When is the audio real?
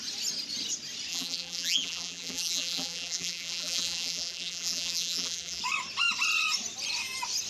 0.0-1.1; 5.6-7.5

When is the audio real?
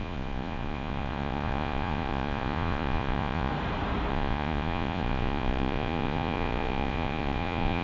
3.5-4.1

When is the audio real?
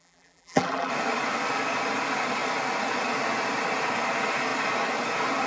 0.9-5.5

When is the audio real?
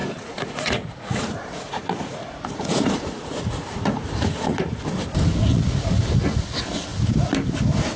4.8-5.5; 6.1-8.0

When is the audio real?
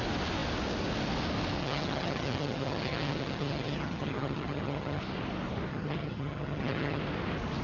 0.0-1.6; 5.0-5.7; 7.0-7.6